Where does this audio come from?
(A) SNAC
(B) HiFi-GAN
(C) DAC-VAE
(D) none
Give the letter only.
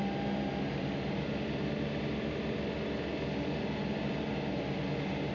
D